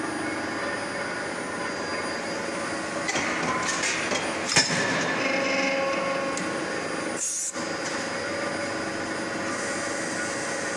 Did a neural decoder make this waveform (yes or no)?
no